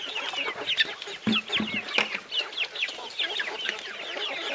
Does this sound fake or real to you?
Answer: real